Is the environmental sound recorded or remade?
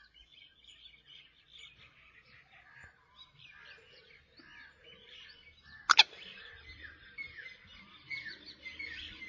recorded